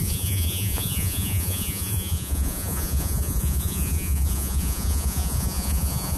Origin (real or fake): fake